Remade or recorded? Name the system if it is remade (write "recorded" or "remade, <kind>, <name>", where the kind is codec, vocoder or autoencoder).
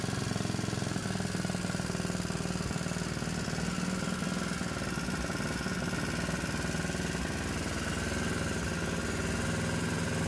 recorded